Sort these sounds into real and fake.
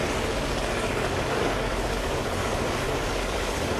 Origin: fake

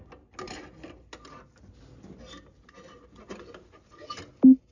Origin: real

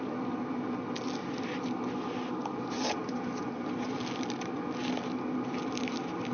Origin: real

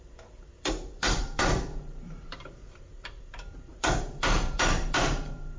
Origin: fake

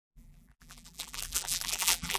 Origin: fake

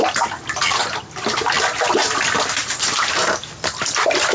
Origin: real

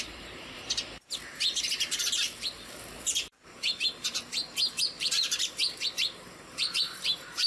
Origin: fake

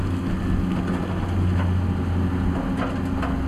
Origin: real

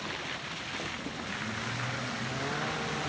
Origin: real